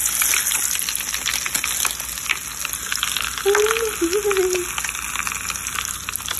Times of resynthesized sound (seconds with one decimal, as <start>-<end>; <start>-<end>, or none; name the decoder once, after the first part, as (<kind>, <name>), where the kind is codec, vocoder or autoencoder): none